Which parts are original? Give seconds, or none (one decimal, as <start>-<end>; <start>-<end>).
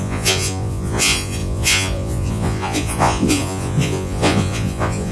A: none